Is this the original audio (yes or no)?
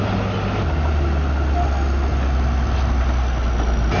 yes